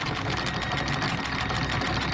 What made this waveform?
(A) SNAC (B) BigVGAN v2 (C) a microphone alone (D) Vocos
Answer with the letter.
C